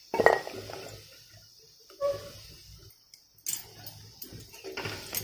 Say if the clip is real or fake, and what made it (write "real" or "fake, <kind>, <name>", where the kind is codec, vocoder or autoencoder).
real